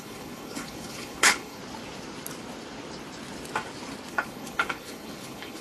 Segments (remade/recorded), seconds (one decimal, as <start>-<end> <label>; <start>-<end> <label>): 0.0-1.6 remade; 1.6-4.1 recorded; 4.1-5.6 remade

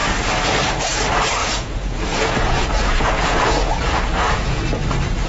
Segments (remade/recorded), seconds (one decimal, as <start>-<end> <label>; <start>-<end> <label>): 0.0-1.4 recorded; 1.4-4.6 remade; 4.6-5.3 recorded

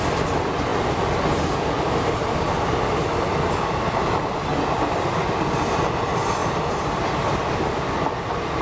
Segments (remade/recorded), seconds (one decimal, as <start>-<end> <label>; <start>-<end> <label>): 0.0-8.6 recorded

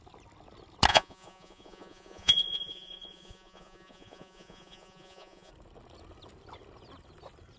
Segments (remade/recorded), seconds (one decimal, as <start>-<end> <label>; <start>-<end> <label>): 0.0-0.9 recorded; 0.9-5.5 remade; 5.5-7.6 recorded

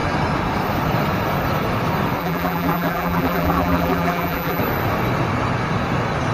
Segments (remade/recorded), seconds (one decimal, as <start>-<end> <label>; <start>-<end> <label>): 0.0-2.2 recorded; 2.2-4.6 remade; 4.6-6.3 recorded

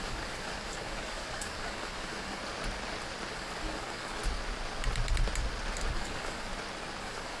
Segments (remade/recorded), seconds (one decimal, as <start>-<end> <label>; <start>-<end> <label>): 0.0-2.4 remade; 2.4-3.3 recorded; 3.3-4.2 remade; 4.2-5.9 recorded; 5.9-6.5 remade; 6.5-7.0 recorded; 7.0-7.4 remade